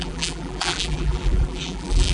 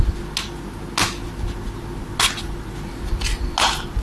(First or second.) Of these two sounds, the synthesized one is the first